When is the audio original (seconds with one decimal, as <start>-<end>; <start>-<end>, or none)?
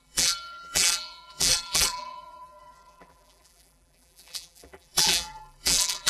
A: none